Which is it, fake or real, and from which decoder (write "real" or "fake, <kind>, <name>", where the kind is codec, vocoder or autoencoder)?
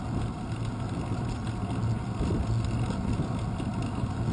real